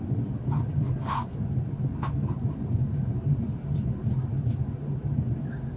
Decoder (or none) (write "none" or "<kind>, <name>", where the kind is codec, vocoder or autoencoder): none